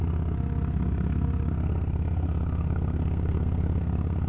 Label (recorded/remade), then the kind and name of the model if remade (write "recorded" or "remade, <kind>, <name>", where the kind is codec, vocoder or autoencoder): remade, codec, SNAC